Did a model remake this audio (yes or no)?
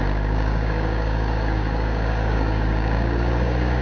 yes